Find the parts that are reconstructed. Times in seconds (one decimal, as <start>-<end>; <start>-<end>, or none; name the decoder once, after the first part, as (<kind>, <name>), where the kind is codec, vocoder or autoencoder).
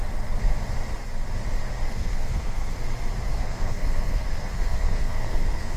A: 1.9-2.8 (codec, SNAC); 3.3-5.8